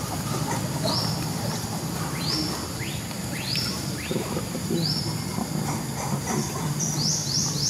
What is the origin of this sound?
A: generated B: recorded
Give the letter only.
B